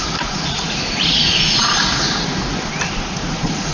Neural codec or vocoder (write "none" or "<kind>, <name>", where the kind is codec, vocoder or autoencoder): vocoder, Vocos